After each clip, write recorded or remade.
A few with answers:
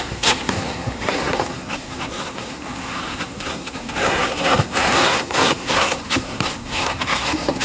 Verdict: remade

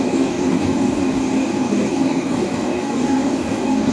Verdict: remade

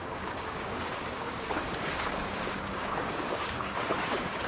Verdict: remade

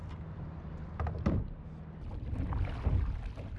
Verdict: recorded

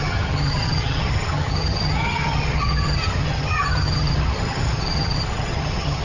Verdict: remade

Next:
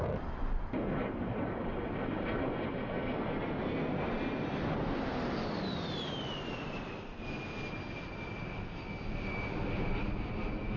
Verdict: recorded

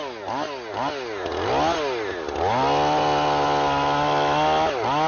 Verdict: recorded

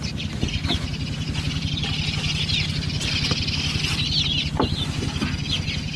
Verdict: recorded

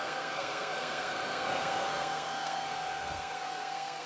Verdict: remade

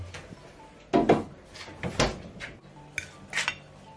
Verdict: recorded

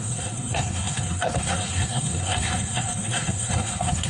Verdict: remade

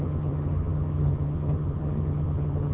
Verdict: remade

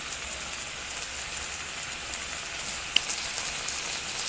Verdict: recorded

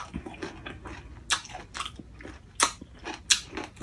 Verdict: recorded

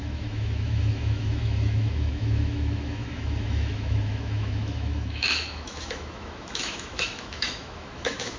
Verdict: remade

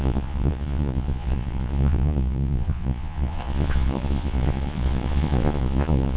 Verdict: remade